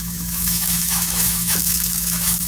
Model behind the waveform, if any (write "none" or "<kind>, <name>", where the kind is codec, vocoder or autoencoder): autoencoder, DAC-VAE